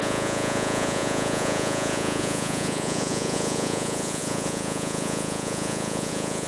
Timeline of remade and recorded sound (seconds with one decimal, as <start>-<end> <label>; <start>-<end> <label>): 0.0-6.5 remade